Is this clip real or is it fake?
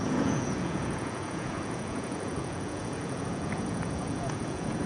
fake